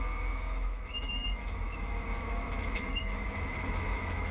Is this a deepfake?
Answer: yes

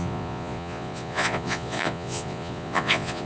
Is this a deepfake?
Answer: yes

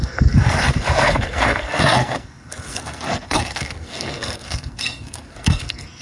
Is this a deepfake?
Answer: yes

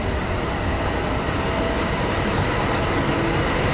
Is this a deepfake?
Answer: no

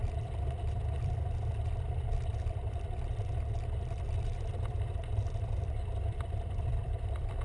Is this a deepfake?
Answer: yes